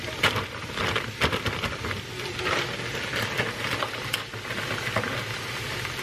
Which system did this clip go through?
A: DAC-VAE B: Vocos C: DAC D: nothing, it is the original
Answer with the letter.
D